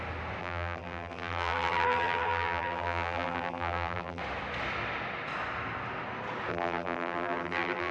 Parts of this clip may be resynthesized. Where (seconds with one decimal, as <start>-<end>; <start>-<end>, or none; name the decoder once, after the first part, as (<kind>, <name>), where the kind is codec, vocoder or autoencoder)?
0.4-4.2 (vocoder, BigVGAN v2); 6.5-7.9